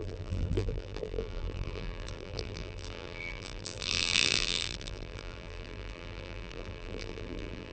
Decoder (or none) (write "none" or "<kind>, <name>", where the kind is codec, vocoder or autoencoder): vocoder, BigVGAN v2